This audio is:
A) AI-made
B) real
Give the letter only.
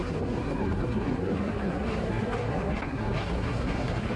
A